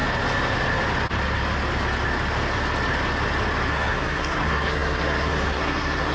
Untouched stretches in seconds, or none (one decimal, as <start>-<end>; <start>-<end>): 0.0-3.7